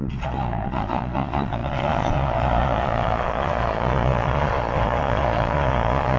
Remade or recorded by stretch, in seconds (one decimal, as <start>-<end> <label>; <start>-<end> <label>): 0.0-6.2 remade

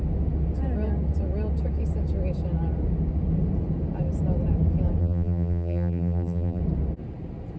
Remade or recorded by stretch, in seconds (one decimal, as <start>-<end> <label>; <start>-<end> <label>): 0.0-5.0 recorded; 5.0-6.6 remade; 6.6-7.6 recorded

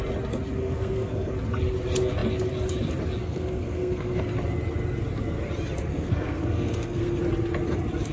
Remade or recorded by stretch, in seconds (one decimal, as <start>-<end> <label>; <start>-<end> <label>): 0.0-0.6 recorded; 0.6-1.3 remade; 1.3-3.2 recorded; 3.2-4.2 remade; 4.2-5.9 recorded; 5.9-7.2 remade; 7.2-8.1 recorded

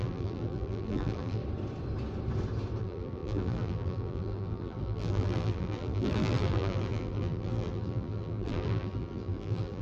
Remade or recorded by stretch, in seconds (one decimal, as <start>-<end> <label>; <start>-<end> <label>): 0.0-1.4 remade; 1.4-2.8 recorded; 2.8-9.8 remade

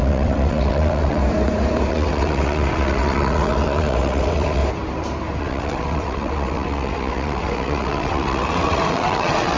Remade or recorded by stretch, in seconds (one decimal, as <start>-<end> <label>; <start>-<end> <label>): 0.0-1.2 remade; 1.2-1.9 recorded; 1.9-4.6 remade; 4.6-5.4 recorded; 5.4-9.6 remade

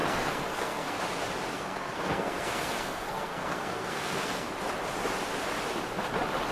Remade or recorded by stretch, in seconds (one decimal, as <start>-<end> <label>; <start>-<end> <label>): 0.0-1.0 remade; 1.0-1.5 recorded; 1.5-4.5 remade; 4.5-6.5 recorded